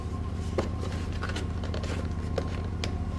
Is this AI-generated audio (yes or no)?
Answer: no